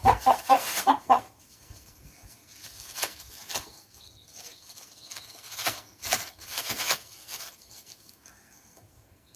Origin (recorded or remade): remade